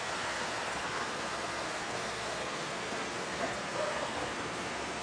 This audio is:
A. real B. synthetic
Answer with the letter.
B